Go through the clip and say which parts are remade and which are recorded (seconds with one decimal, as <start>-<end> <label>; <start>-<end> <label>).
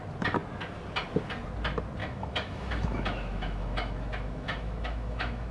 0.0-2.0 recorded; 2.0-5.5 remade